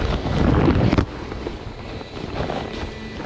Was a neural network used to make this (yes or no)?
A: no